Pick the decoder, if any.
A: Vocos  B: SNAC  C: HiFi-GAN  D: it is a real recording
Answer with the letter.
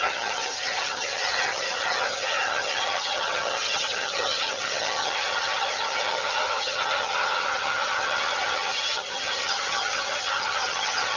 C